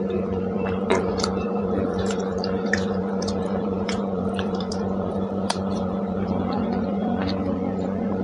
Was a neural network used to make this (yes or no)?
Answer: yes